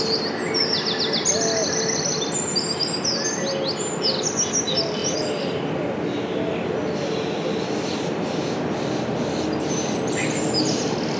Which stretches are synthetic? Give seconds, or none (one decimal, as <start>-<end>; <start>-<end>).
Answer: none